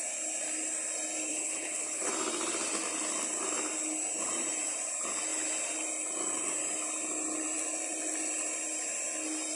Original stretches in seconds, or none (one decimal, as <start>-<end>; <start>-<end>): 0.0-1.3; 2.1-9.6